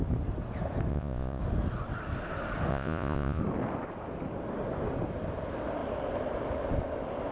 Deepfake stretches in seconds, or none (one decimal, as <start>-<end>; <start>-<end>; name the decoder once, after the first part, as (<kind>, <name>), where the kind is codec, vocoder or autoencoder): 0.9-1.4 (vocoder, Vocos); 2.7-3.4